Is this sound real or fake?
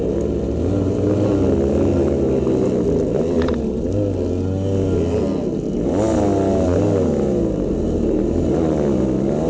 real